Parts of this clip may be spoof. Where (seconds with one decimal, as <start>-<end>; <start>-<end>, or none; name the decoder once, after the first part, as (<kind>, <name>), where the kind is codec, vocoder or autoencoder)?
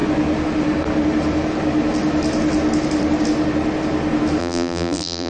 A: 4.4-5.3 (vocoder, BigVGAN v2)